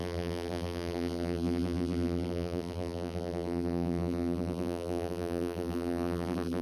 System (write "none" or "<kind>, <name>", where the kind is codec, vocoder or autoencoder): vocoder, BigVGAN v2